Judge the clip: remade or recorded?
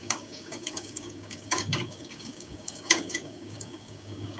remade